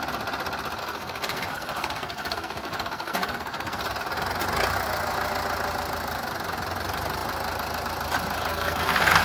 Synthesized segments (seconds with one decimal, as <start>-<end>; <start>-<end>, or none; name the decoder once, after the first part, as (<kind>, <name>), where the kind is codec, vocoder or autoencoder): 0.8-3.8 (codec, SNAC); 8.5-9.2